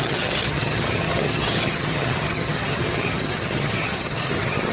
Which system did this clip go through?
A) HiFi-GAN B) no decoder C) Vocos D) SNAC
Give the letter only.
A